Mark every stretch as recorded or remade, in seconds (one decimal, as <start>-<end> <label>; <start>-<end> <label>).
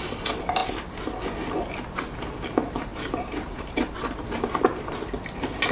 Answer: 0.0-2.9 recorded; 2.9-4.6 remade; 4.6-5.7 recorded